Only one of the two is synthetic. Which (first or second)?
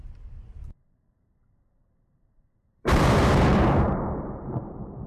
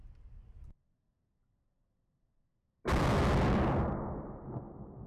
first